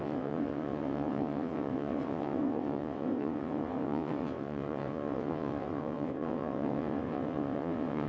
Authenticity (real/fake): fake